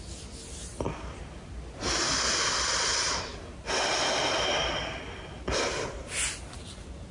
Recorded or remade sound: recorded